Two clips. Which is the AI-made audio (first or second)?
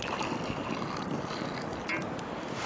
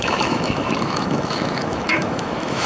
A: second